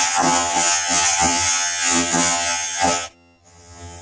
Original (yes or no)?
no